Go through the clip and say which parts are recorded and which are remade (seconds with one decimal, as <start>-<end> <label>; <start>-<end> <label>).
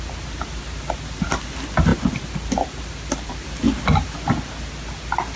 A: 0.0-5.4 recorded